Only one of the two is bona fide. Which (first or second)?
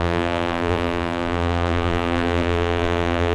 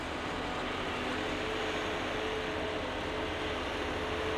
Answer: second